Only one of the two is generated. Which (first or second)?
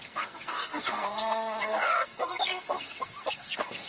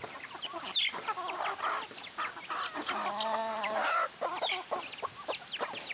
first